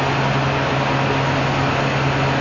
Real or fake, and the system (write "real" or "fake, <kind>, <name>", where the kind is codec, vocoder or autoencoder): real